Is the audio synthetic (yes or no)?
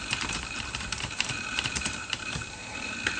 yes